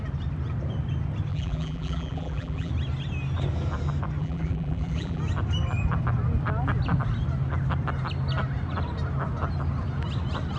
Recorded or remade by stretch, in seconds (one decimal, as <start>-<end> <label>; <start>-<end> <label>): 0.0-1.3 recorded; 1.3-2.7 remade; 2.7-4.2 recorded; 4.2-5.2 remade; 5.2-10.6 recorded